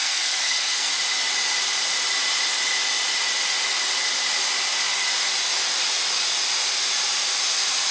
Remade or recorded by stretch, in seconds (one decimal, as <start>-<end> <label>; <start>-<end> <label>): 0.0-0.9 remade; 0.9-7.9 recorded